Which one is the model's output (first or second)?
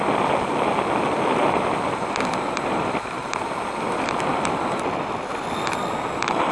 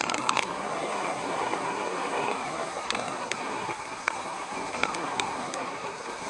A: second